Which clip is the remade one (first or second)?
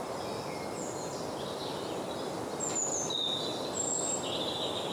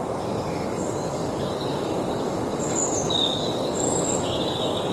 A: second